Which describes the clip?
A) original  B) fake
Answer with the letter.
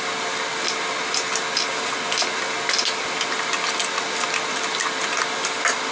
A